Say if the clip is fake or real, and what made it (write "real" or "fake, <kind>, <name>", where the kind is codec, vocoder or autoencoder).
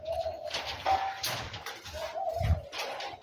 real